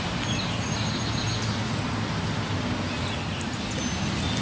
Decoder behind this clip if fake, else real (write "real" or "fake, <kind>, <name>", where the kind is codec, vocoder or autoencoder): real